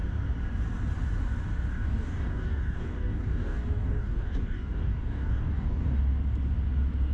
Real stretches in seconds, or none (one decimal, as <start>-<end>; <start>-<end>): 0.0-1.7; 6.0-7.1